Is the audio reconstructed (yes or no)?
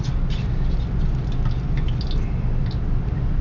no